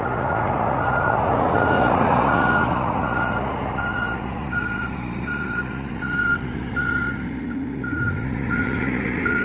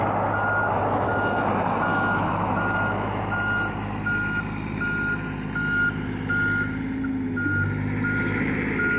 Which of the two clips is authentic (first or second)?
second